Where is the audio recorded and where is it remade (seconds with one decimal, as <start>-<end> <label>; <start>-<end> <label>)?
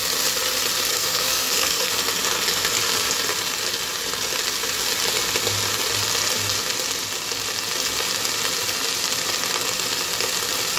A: 0.0-0.9 recorded; 0.9-1.9 remade; 1.9-10.8 recorded